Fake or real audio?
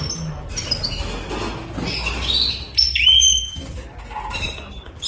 real